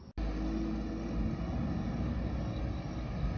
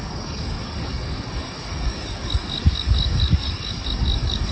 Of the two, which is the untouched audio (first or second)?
first